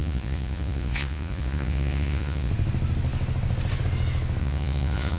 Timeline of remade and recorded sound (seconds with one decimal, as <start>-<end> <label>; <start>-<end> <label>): 0.0-2.5 remade; 2.5-4.4 recorded; 4.4-5.2 remade